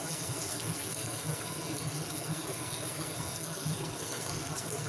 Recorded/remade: remade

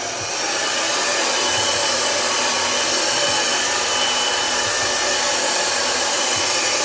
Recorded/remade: recorded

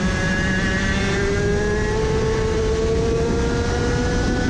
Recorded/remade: recorded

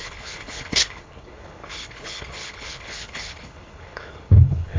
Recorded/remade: remade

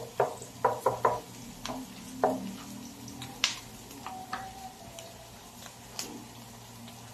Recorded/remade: recorded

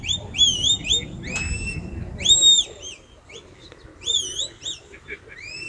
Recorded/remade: recorded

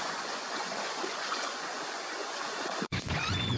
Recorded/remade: remade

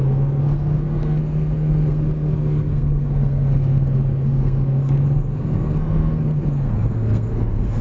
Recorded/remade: remade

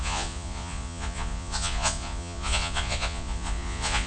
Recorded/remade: remade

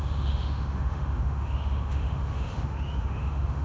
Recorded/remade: remade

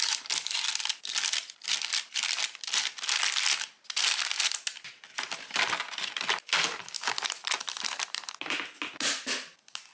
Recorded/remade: recorded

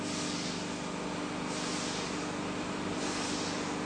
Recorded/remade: recorded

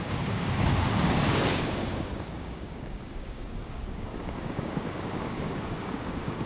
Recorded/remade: remade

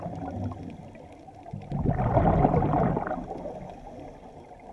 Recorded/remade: recorded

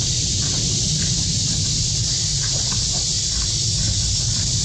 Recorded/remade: recorded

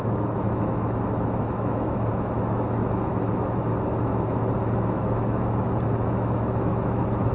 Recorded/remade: remade